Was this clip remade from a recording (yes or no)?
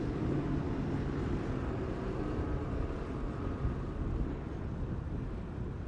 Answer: no